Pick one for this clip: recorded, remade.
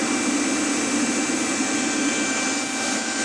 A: recorded